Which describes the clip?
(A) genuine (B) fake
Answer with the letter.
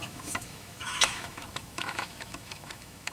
B